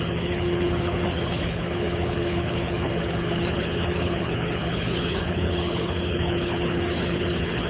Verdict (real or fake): fake